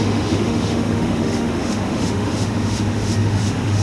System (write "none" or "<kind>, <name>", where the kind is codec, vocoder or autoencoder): autoencoder, DAC-VAE